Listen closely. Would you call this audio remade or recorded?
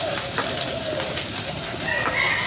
recorded